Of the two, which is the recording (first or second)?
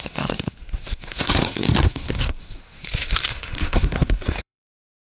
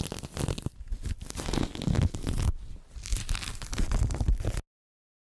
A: second